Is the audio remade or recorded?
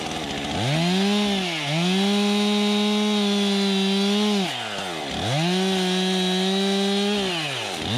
recorded